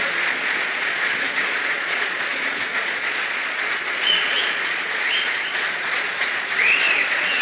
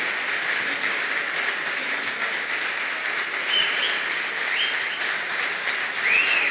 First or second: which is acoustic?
second